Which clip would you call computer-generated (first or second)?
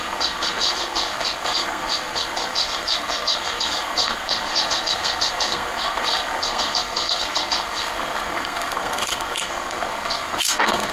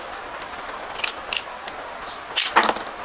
first